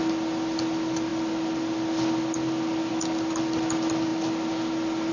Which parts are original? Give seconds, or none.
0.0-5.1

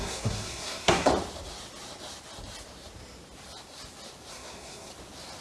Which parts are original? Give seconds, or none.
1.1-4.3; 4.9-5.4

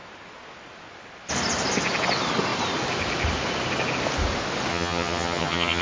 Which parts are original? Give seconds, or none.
0.0-4.7